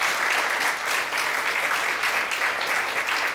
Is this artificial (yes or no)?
no